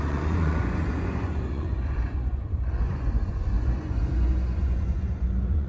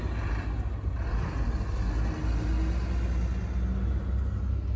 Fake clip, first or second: first